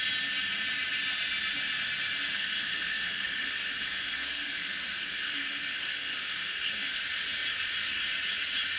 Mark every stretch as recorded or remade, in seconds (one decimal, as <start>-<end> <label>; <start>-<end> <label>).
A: 0.0-2.3 recorded; 2.3-7.0 remade; 7.0-8.8 recorded